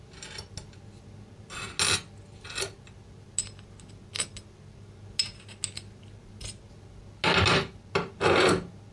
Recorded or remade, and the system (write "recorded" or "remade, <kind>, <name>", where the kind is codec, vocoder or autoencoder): recorded